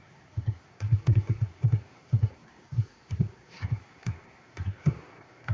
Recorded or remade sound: remade